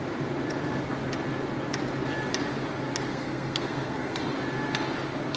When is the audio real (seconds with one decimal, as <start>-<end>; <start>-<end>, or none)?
0.0-3.1; 4.2-5.4